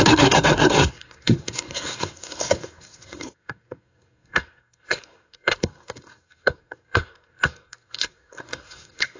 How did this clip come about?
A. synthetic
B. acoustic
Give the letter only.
A